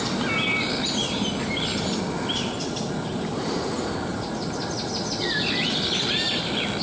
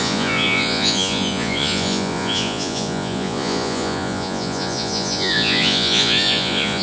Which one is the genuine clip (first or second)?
first